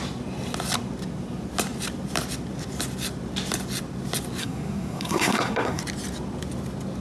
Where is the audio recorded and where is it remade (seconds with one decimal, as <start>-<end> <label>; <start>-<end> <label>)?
0.0-4.4 recorded; 4.4-5.8 remade; 5.8-7.0 recorded